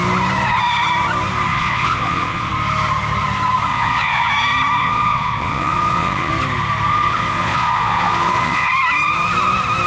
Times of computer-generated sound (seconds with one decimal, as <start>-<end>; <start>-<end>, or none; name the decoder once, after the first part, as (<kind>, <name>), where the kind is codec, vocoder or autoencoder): 1.5-2.5 (vocoder, Vocos); 3.7-4.3; 4.8-6.3; 6.9-8.7